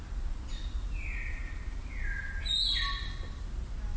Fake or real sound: real